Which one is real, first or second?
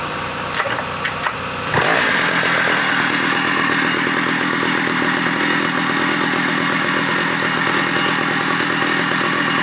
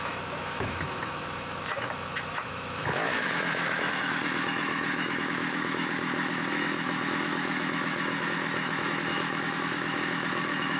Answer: first